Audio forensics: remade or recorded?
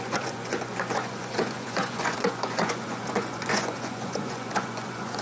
remade